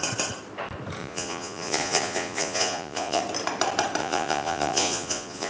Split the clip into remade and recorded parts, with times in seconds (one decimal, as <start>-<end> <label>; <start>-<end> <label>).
0.0-1.0 recorded; 1.0-3.2 remade; 3.2-4.0 recorded; 4.0-5.5 remade